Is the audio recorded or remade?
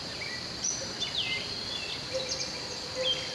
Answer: recorded